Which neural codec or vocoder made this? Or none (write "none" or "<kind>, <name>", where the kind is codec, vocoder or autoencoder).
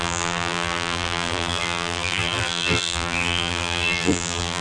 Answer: vocoder, BigVGAN v2